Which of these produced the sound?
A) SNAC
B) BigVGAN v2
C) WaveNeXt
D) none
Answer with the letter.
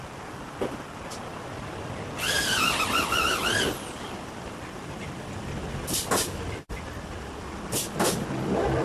B